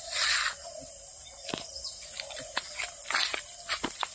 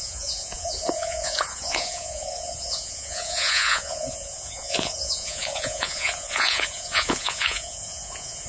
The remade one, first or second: second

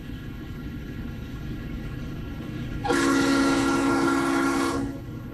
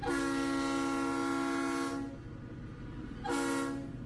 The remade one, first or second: first